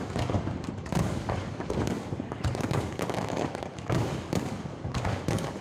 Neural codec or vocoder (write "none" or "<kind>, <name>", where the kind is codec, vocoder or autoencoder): codec, DAC